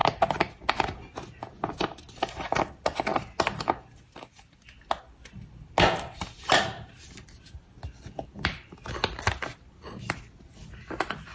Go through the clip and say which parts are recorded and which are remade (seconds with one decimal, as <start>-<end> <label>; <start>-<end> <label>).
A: 0.0-11.3 recorded